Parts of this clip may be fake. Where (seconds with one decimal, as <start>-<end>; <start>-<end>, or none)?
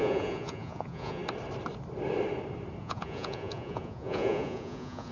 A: 0.0-1.2; 2.8-5.1